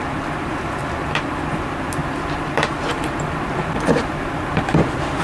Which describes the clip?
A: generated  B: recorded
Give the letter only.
A